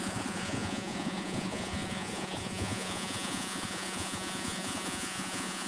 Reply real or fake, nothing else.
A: fake